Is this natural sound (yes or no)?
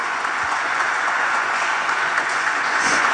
no